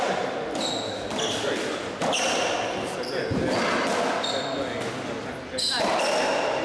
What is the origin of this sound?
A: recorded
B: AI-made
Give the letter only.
A